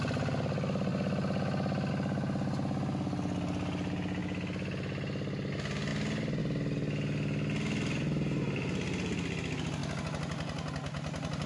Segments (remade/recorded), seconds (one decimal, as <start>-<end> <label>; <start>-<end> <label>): 0.0-11.5 recorded